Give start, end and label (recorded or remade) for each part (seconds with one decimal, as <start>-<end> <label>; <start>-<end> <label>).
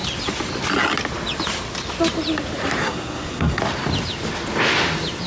0.0-2.8 recorded; 2.8-3.6 remade; 3.6-5.3 recorded